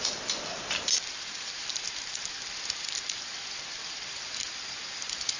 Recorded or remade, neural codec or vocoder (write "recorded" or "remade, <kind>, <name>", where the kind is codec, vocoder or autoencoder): recorded